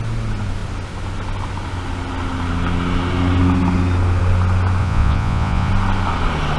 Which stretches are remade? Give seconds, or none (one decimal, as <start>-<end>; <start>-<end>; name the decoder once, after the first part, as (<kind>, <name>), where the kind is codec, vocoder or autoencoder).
4.8-5.7 (vocoder, Vocos)